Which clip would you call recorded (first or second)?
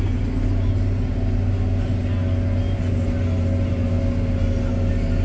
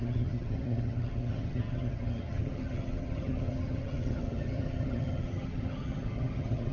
first